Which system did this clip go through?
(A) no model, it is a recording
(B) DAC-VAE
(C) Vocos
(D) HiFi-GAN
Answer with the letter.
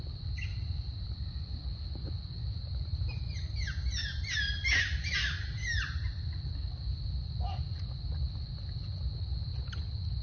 A